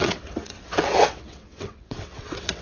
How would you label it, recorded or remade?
remade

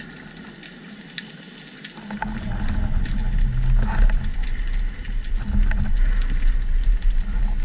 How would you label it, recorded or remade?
recorded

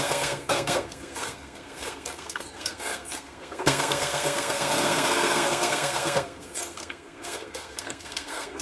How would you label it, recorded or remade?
remade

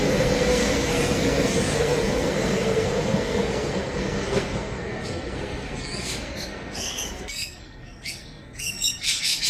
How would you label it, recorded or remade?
remade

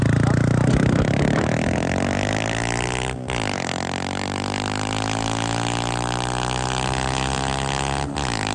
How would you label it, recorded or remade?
recorded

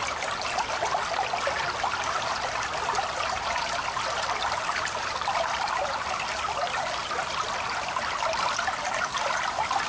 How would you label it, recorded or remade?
recorded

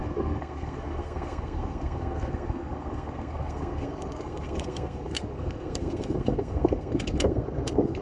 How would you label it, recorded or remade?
remade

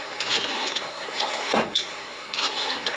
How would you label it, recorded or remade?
remade